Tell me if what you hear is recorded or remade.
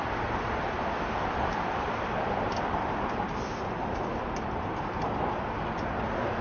recorded